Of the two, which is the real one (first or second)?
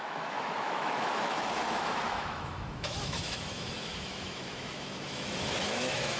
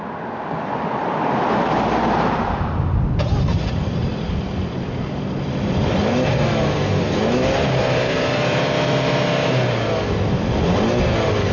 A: second